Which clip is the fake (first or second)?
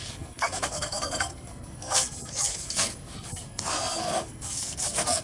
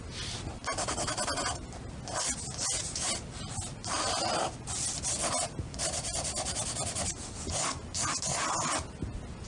first